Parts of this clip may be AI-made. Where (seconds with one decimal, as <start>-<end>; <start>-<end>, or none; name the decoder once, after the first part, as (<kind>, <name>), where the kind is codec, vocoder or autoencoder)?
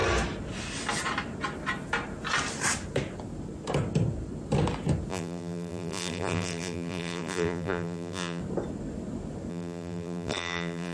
5.1-8.4 (vocoder, BigVGAN v2); 9.5-10.9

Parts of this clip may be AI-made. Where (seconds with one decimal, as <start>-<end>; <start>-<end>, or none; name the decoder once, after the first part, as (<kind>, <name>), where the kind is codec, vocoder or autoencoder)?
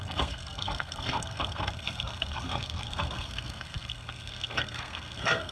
0.0-5.5 (codec, SNAC)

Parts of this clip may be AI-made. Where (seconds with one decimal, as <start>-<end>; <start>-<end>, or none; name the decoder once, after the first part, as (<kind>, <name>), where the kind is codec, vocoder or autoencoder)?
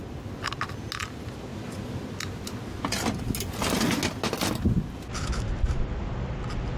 none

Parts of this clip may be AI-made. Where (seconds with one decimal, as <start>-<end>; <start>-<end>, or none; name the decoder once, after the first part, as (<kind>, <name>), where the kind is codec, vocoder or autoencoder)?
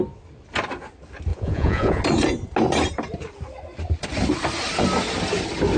1.3-2.0 (vocoder, Vocos)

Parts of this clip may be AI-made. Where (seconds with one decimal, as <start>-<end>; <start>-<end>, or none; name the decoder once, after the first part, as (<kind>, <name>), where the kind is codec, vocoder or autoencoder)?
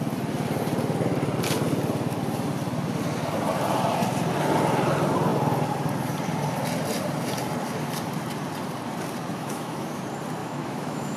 9.3-10.0 (autoencoder, DAC-VAE); 10.4-11.2